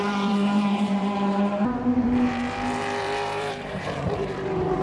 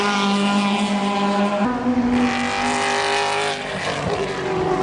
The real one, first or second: second